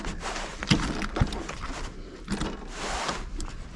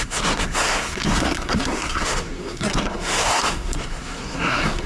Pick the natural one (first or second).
first